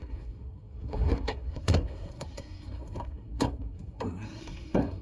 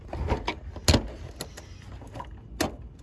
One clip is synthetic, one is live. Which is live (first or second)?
second